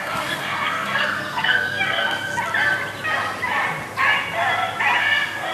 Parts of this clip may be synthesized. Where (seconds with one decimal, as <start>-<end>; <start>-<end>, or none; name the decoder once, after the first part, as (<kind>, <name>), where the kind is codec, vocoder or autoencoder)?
0.0-2.3 (codec, SNAC); 5.0-5.5